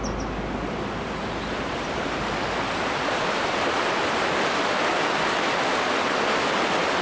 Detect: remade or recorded recorded